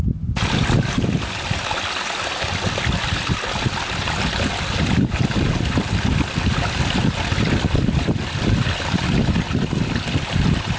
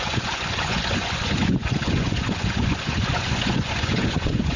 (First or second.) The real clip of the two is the first